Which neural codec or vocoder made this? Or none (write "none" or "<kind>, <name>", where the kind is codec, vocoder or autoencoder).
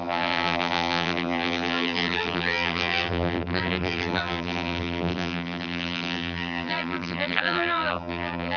vocoder, BigVGAN v2